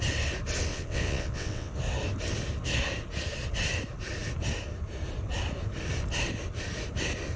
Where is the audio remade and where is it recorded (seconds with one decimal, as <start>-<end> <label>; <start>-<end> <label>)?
0.0-0.7 recorded; 0.7-1.7 remade; 1.7-7.4 recorded